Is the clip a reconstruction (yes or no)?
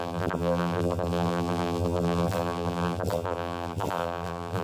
yes